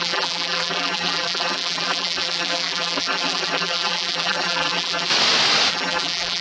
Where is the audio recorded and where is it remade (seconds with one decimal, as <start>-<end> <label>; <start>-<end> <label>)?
0.0-5.1 remade; 5.1-5.7 recorded; 5.7-6.4 remade